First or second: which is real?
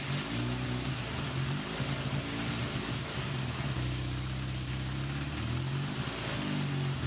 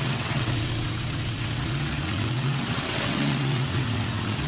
first